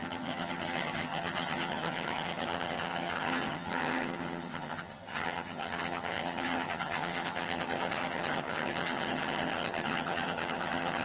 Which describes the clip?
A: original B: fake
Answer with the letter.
B